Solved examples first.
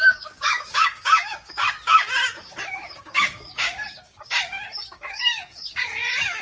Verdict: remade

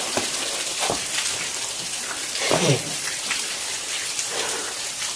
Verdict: remade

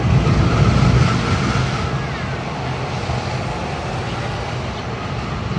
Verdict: recorded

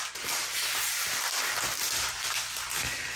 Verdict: recorded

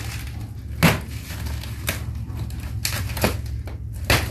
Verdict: recorded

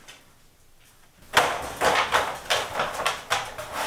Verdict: recorded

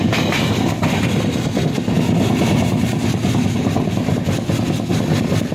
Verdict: recorded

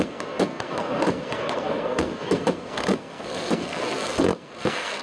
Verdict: remade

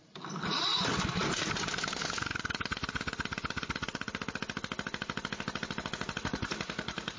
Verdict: recorded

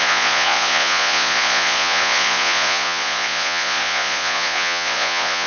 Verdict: remade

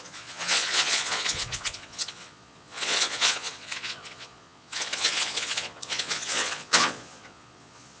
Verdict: remade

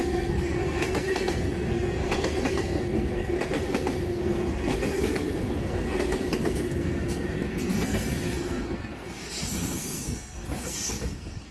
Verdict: remade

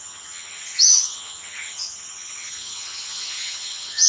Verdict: remade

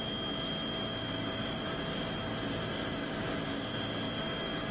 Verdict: recorded